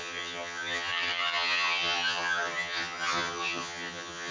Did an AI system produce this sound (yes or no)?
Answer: yes